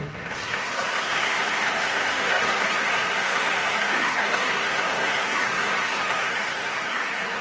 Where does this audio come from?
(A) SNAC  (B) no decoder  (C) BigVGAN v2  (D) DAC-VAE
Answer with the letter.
A